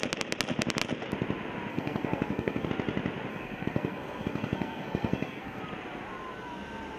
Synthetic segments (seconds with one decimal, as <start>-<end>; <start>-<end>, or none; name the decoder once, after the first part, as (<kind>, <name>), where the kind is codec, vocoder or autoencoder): 1.7-2.7 (codec, SNAC); 3.3-5.6